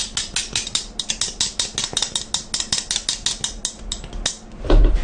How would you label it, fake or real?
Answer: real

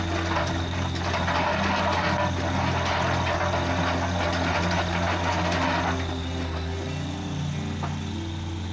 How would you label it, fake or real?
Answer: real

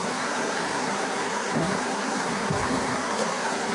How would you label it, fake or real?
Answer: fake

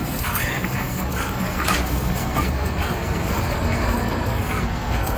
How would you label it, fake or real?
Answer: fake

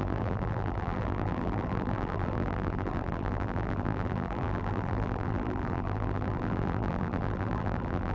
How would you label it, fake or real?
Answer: fake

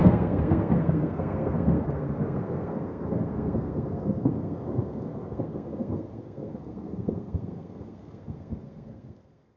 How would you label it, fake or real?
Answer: fake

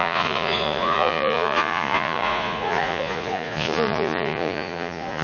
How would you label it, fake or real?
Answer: fake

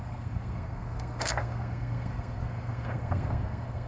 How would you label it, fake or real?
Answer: fake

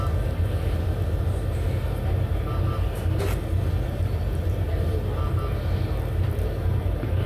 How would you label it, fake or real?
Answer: real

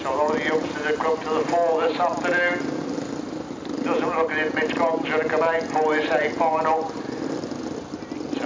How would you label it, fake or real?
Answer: real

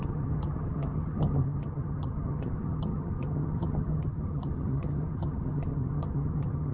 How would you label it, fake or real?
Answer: fake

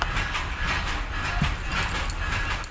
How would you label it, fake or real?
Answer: real